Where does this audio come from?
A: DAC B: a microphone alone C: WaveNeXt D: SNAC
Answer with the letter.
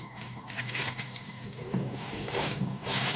A